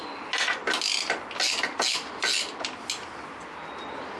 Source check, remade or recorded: recorded